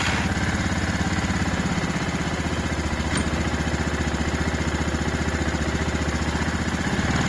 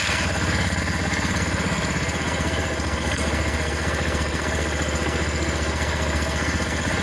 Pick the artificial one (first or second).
second